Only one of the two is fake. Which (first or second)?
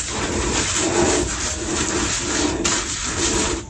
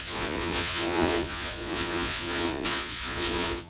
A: second